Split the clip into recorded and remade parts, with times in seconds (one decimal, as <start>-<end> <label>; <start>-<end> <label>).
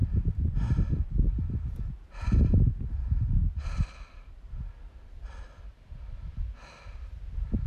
0.0-7.7 recorded